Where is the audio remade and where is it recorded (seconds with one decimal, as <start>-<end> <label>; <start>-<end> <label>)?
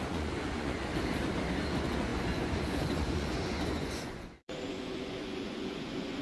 0.0-0.9 remade; 0.9-1.5 recorded; 1.5-6.2 remade